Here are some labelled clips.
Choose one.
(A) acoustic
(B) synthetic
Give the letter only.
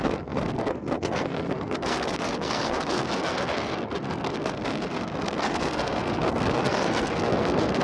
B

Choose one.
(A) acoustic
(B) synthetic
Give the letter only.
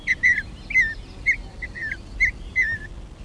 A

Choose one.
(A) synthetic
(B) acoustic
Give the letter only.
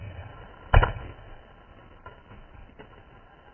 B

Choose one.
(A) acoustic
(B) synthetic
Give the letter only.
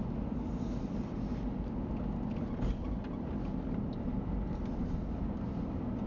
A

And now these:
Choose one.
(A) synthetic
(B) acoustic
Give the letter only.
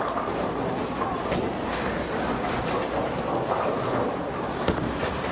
B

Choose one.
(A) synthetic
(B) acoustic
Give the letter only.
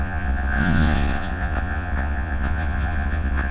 A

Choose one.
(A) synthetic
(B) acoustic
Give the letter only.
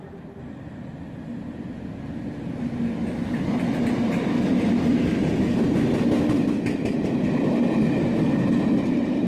B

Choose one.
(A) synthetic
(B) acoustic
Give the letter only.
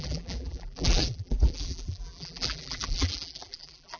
A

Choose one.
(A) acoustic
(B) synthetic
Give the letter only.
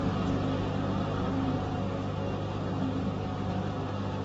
A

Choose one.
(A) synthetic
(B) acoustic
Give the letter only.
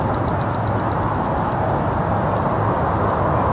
B